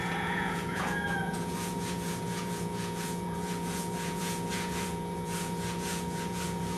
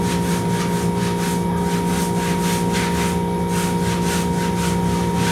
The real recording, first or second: second